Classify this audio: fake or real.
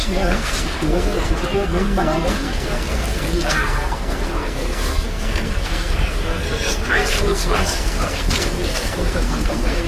fake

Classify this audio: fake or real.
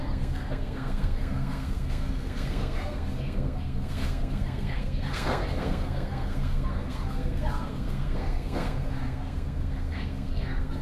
fake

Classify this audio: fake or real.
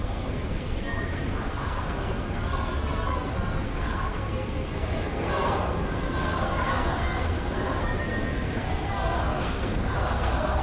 fake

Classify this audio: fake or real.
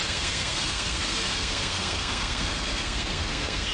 fake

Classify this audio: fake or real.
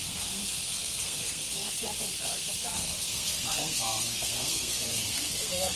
fake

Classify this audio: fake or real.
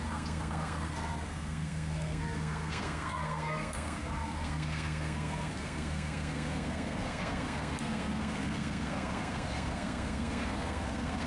fake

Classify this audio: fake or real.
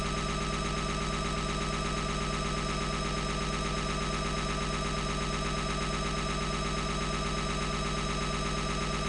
real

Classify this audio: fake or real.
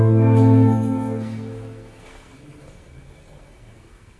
fake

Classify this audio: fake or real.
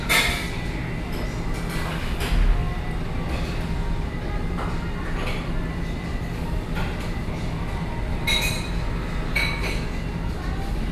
real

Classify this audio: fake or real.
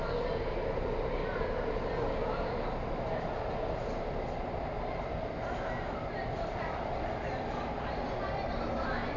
real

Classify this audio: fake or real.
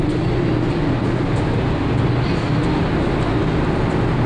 real